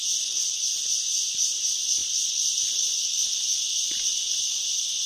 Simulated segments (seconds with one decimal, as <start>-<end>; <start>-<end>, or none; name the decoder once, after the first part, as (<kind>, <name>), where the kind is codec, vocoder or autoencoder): 0.0-1.1 (vocoder, BigVGAN v2)